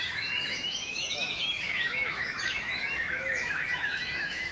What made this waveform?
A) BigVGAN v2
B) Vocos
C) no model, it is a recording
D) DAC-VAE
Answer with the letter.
D